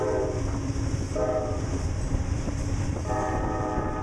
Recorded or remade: remade